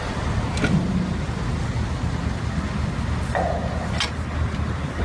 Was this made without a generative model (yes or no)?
yes